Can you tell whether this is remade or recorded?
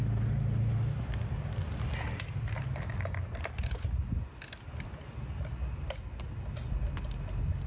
recorded